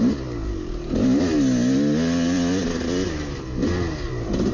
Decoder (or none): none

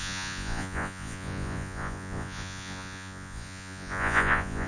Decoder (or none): vocoder, Vocos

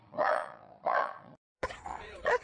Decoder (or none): vocoder, Vocos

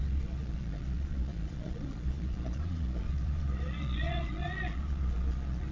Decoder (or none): vocoder, Vocos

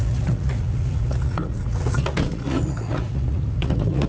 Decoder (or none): vocoder, Vocos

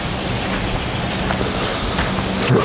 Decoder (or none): none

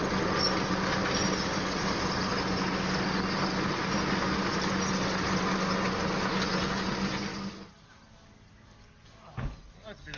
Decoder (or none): none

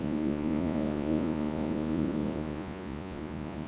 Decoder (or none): vocoder, Vocos